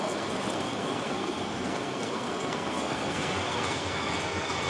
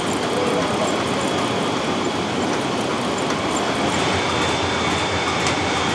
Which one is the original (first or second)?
second